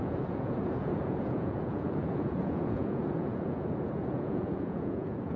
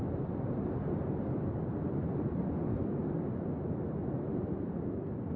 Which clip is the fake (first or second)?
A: first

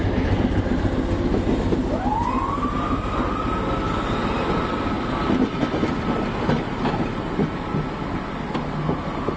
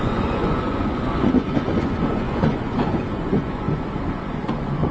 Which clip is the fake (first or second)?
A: second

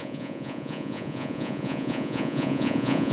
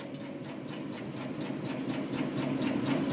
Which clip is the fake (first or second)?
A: first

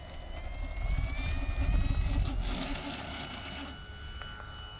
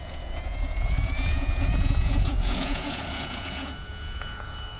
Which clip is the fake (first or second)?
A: second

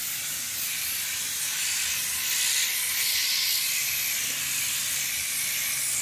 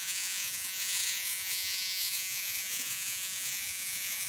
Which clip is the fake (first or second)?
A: second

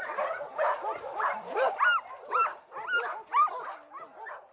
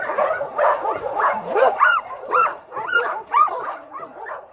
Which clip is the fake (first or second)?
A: second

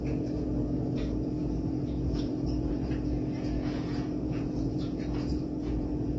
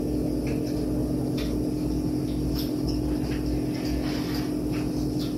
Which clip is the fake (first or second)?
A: first